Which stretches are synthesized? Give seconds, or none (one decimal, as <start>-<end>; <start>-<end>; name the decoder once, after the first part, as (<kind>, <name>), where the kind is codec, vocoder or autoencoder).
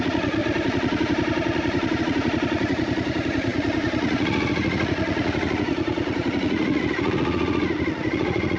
0.0-8.6 (vocoder, Vocos)